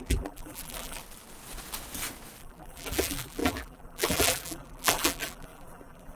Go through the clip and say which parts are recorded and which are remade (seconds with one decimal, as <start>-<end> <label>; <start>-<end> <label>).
0.0-1.0 remade; 1.0-2.4 recorded; 2.4-6.2 remade